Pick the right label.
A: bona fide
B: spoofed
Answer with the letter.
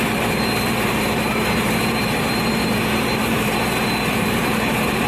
B